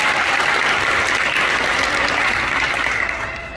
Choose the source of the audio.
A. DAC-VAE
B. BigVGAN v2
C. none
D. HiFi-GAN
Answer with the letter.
C